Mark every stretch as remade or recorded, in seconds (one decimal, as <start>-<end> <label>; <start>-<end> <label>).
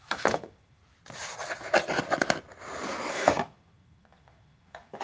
0.0-0.8 remade; 0.8-3.1 recorded; 3.1-5.0 remade